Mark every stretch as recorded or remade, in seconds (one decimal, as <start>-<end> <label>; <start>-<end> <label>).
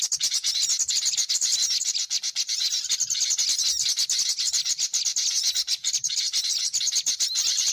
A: 0.0-7.7 recorded